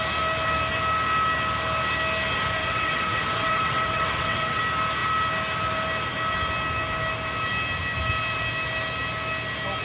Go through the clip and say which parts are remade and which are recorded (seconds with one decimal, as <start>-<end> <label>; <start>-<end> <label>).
0.0-2.6 recorded; 2.6-4.6 remade; 4.6-9.8 recorded